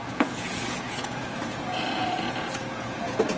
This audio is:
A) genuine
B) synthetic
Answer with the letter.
B